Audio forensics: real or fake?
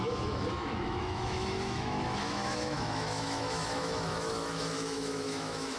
fake